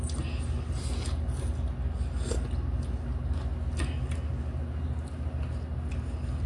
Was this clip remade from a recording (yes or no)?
no